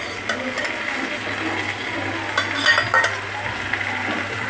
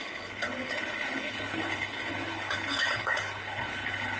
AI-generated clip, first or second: second